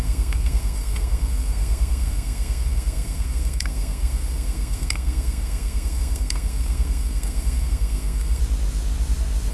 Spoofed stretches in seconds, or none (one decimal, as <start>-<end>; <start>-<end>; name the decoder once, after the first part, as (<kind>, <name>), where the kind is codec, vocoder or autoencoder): 0.0-8.4 (codec, SNAC)